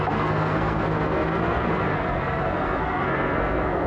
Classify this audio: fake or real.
fake